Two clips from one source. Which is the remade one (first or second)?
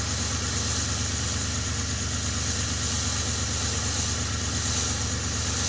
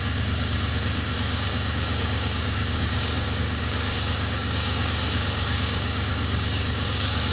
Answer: second